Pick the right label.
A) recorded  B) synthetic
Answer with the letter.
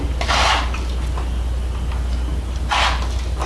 A